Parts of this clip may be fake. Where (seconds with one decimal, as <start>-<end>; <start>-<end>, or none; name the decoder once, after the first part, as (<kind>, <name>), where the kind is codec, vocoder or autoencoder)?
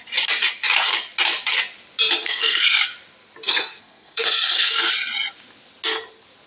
2.2-2.8 (codec, SNAC); 3.5-4.9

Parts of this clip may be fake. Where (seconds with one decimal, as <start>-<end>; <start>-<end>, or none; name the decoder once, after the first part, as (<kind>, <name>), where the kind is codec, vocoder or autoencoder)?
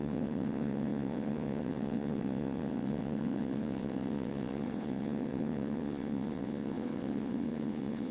0.0-8.1 (vocoder, WaveNeXt)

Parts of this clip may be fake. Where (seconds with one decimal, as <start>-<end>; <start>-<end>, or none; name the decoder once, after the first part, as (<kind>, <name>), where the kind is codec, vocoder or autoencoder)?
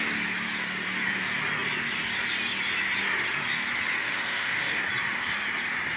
4.0-4.8 (autoencoder, DAC-VAE)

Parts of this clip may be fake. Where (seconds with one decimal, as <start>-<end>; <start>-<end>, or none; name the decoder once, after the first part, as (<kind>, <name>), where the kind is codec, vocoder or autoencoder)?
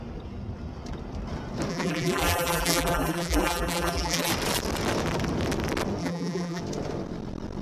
1.7-4.3 (vocoder, BigVGAN v2); 6.0-6.6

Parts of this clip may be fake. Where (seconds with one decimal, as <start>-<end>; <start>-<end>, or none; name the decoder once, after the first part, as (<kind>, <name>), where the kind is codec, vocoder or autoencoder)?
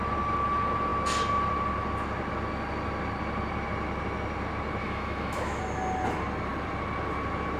4.8-5.6 (autoencoder, DAC-VAE)